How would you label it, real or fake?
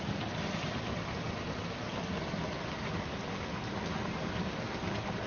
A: real